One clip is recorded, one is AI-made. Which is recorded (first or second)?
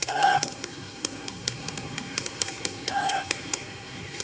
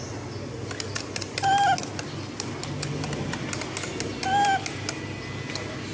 second